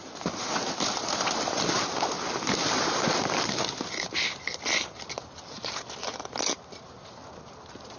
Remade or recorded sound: recorded